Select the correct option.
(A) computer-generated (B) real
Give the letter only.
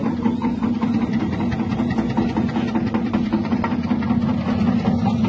B